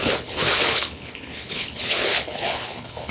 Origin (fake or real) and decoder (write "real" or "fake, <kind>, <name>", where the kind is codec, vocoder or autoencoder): fake, codec, HILCodec